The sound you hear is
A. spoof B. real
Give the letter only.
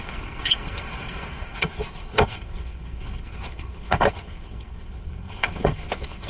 A